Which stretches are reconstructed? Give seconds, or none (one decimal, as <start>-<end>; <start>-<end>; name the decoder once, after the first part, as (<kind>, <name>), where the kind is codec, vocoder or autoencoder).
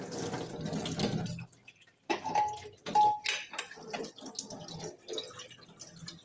none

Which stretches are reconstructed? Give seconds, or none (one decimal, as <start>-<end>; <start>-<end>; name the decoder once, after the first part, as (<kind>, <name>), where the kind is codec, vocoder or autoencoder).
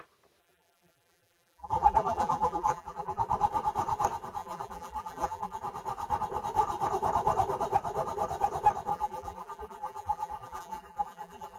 0.4-3.2 (vocoder, BigVGAN v2); 4.4-5.6; 8.9-11.6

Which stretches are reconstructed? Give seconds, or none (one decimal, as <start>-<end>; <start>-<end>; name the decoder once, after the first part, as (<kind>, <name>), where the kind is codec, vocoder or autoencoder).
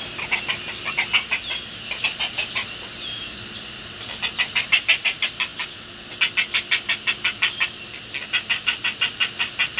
none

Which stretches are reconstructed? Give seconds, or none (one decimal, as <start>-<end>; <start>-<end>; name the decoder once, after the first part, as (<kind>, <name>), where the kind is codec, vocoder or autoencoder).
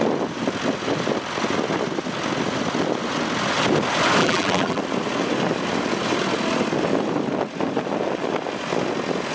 4.2-4.8 (vocoder, BigVGAN v2)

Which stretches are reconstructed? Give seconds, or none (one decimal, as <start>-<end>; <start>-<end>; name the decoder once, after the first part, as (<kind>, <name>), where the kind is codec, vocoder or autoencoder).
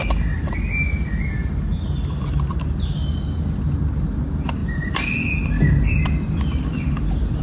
4.6-7.4 (vocoder, BigVGAN v2)